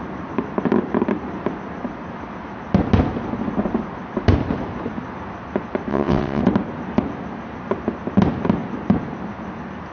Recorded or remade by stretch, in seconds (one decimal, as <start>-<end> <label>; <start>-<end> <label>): 0.0-5.9 recorded; 5.9-6.4 remade; 6.4-9.9 recorded